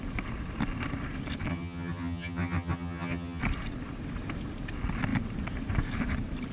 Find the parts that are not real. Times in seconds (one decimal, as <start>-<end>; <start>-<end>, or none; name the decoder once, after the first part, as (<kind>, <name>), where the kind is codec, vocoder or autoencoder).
1.5-3.4 (vocoder, HiFi-GAN)